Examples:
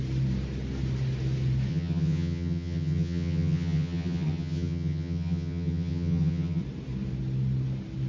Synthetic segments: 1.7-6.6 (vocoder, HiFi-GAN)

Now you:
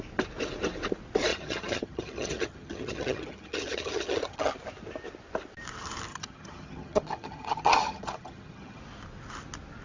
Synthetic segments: 1.3-4.5 (vocoder, HiFi-GAN); 6.1-8.8

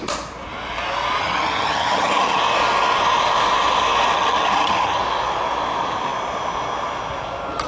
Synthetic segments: 1.2-2.4 (vocoder, HiFi-GAN); 4.1-5.0

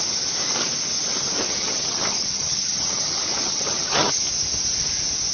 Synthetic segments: 1.4-4.2 (vocoder, HiFi-GAN)